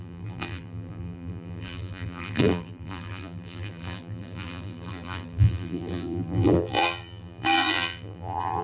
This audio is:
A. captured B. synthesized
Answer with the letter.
B